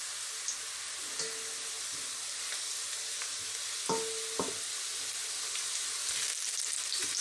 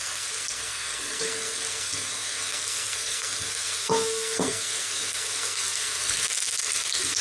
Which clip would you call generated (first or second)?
second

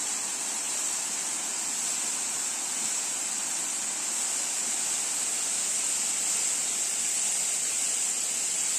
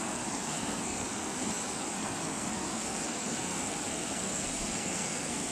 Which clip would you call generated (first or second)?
second